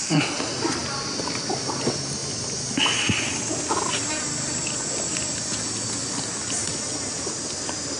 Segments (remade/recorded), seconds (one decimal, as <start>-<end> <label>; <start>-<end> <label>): 0.0-8.0 recorded